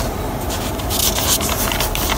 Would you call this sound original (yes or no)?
yes